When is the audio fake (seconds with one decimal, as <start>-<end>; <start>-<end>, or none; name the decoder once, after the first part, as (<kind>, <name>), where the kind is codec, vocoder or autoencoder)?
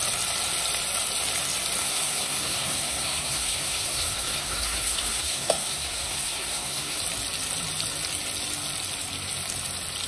1.8-7.0 (codec, SNAC)